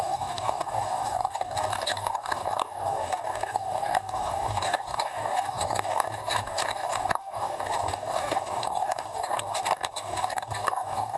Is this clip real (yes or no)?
no